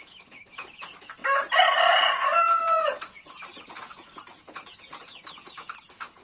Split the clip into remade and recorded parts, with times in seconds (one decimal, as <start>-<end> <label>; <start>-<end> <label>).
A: 0.0-1.2 remade; 1.2-1.9 recorded; 1.9-6.2 remade